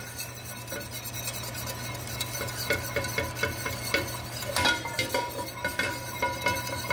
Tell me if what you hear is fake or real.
real